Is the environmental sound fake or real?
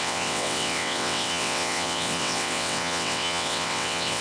fake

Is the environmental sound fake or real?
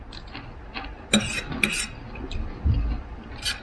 real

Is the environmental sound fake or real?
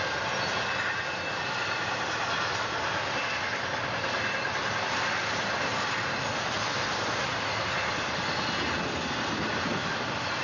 real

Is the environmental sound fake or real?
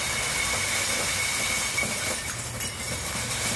real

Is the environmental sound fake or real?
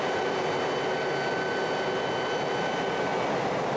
real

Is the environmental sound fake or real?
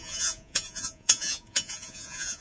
fake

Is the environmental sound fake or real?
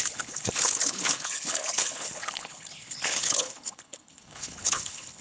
fake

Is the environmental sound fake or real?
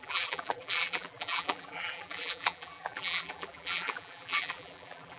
fake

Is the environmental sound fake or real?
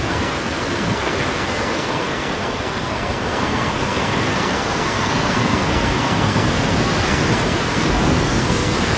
fake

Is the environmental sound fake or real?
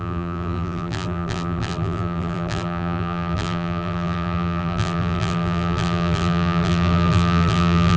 fake